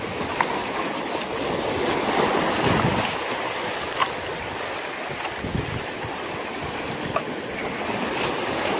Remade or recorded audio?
recorded